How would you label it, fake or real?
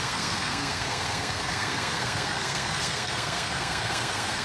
fake